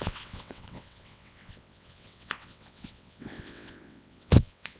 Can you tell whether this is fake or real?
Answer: fake